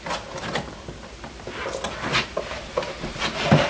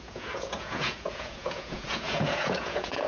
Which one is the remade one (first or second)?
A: second